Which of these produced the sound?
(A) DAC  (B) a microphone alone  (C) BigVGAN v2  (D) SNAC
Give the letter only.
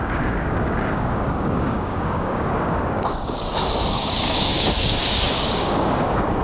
A